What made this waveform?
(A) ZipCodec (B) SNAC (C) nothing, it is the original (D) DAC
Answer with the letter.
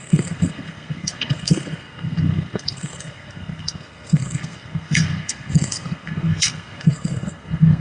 B